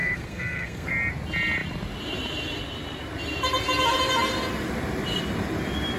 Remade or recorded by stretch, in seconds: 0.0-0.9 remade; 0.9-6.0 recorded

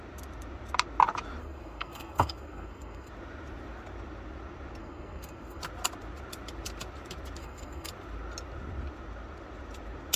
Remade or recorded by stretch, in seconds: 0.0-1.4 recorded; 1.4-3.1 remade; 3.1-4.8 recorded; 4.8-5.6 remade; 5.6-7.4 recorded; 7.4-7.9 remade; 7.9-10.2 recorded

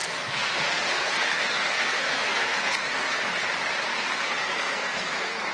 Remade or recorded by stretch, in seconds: 0.0-3.2 remade; 3.2-3.9 recorded; 3.9-5.5 remade